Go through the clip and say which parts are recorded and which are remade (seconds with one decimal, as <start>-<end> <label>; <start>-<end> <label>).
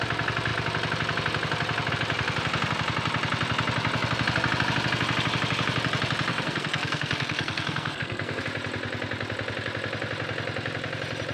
0.0-6.3 recorded; 6.3-8.4 remade; 8.4-11.3 recorded